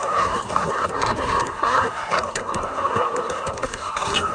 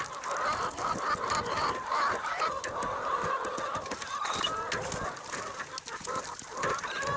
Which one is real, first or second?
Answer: second